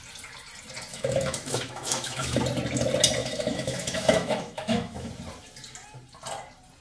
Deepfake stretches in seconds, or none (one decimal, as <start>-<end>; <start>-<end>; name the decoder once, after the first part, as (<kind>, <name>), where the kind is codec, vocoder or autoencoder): 0.9-2.4 (autoencoder, DAC-VAE); 3.2-5.1